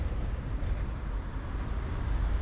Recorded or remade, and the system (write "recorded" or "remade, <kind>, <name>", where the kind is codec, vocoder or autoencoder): recorded